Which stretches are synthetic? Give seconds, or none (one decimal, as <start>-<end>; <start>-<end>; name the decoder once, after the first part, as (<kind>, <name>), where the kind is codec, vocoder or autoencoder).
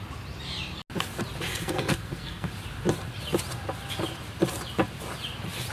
1.5-2.5 (codec, SNAC)